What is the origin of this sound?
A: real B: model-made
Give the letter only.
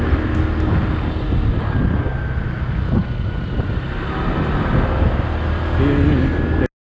A